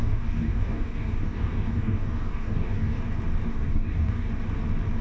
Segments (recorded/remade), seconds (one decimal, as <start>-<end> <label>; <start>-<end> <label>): 0.0-3.0 remade; 3.0-3.5 recorded; 3.5-4.3 remade; 4.3-5.0 recorded